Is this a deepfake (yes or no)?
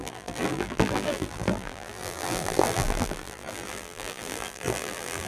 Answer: yes